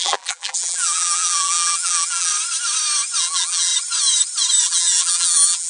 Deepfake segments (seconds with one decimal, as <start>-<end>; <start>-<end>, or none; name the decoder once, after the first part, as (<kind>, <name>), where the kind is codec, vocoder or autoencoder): 0.0-2.3 (vocoder, BigVGAN v2); 3.2-3.7; 4.6-5.7